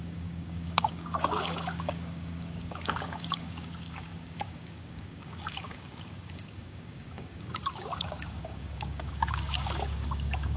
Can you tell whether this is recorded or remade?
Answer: remade